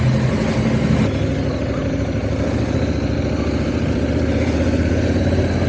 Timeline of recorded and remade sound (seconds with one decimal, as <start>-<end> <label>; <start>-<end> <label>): 0.0-1.8 recorded; 1.8-5.2 remade; 5.2-5.7 recorded